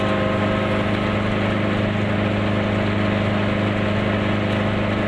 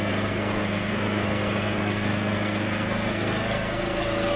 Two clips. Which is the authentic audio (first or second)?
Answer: first